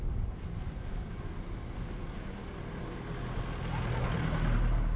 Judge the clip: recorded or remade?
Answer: recorded